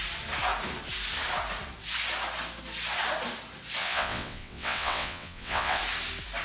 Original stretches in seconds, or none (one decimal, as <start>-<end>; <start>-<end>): 0.0-3.8; 5.8-6.4